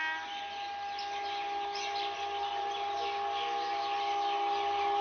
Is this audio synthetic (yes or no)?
no